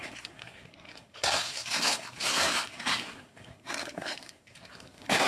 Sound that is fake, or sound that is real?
fake